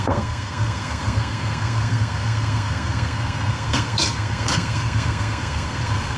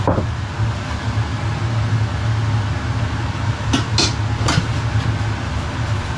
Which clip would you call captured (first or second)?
second